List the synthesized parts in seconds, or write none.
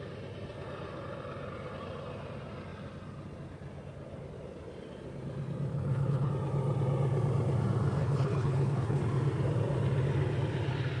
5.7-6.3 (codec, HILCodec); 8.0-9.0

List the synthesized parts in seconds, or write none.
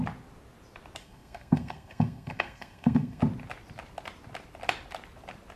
1.0-3.2 (codec, SNAC)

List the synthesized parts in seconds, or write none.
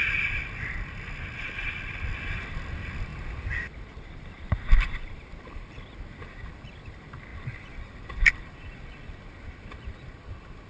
3.1-5.1 (vocoder, BigVGAN v2)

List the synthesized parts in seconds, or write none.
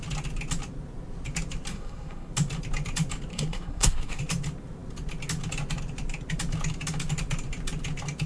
1.7-2.3 (codec, SNAC); 3.3-4.2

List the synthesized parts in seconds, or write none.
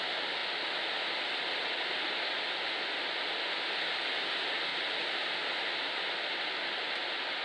4.7-5.3 (vocoder, BigVGAN v2)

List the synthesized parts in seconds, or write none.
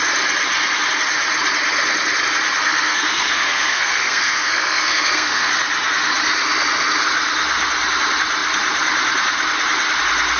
2.6-5.5 (codec, SNAC)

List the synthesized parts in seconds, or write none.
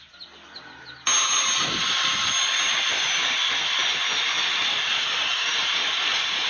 none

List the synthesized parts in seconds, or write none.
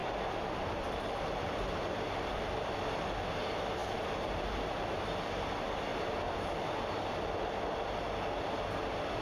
0.0-2.7 (vocoder, BigVGAN v2); 3.8-5.5; 5.9-6.5